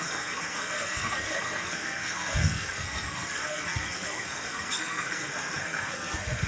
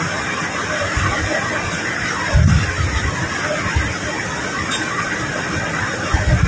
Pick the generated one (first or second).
first